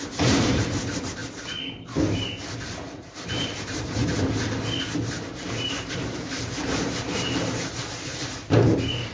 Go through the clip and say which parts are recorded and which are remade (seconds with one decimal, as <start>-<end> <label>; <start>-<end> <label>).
0.0-1.2 remade; 1.2-3.1 recorded; 3.1-4.0 remade; 4.0-5.0 recorded; 5.0-9.1 remade